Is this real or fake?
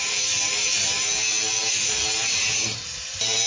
fake